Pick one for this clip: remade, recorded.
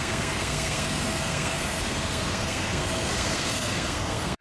remade